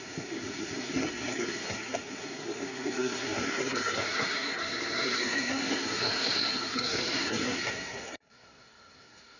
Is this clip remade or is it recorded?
remade